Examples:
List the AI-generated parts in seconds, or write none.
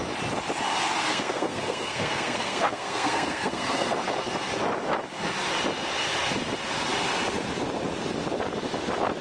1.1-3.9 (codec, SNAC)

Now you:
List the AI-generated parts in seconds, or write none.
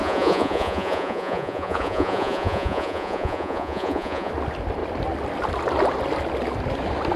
0.0-4.3 (vocoder, Vocos)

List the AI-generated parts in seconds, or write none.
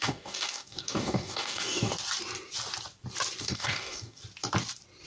0.0-1.9 (codec, DAC); 3.4-4.2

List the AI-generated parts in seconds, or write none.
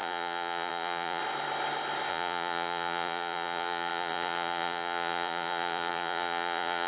0.0-1.2 (vocoder, Vocos); 2.1-6.9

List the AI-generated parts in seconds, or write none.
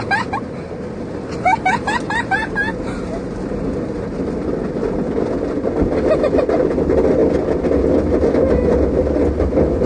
none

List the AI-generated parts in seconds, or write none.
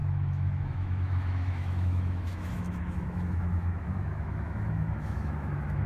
0.0-5.9 (autoencoder, DAC-VAE)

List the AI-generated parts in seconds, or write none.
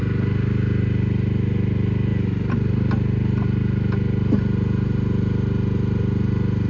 none